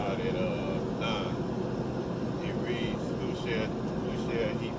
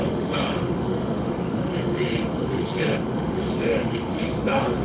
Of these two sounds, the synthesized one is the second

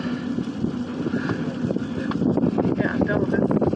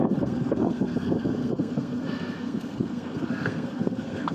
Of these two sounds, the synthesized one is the second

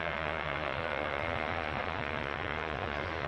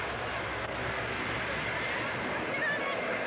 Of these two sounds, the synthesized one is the first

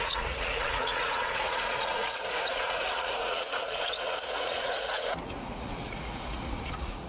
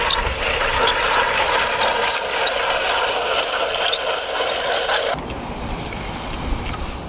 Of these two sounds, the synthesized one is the first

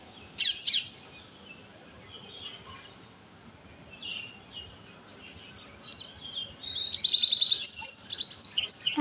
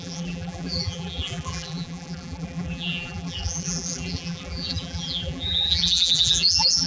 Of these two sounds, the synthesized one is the second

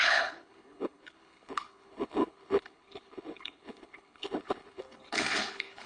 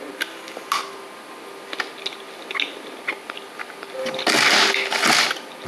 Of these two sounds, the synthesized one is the first